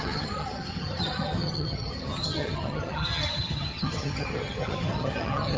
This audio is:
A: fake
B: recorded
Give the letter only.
A